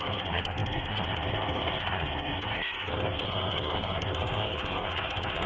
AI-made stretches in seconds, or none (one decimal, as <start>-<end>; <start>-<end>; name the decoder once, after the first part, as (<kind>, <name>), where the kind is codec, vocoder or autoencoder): 0.0-5.5 (codec, SNAC)

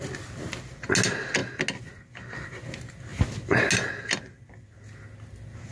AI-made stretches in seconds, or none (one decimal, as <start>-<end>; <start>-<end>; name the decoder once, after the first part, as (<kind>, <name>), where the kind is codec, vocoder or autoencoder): none

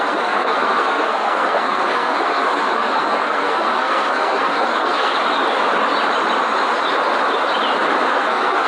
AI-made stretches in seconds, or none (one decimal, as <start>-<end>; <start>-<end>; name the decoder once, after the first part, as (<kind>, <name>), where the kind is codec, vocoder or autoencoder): 0.0-5.1 (codec, SNAC); 8.1-8.7

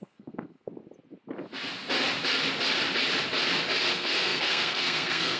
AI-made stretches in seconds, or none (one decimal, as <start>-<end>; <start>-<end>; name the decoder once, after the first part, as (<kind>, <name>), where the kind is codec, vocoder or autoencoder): 0.0-0.7 (codec, SNAC); 3.9-5.4

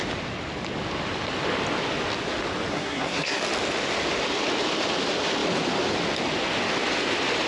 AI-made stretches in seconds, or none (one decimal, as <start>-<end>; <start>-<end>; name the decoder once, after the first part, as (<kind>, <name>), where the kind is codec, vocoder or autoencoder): 2.7-3.4 (codec, SNAC)

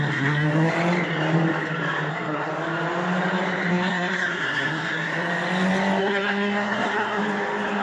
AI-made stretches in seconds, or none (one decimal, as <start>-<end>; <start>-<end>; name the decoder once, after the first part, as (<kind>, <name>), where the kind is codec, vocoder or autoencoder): 0.0-0.7 (codec, SNAC); 2.1-2.5; 3.7-5.3; 6.0-7.2